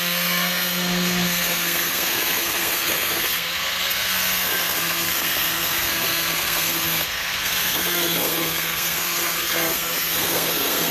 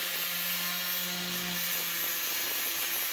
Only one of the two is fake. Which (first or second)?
first